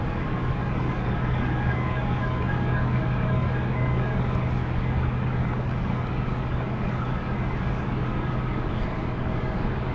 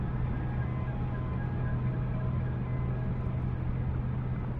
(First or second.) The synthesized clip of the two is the first